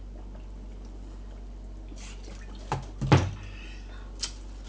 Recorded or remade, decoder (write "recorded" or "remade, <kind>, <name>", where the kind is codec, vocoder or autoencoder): recorded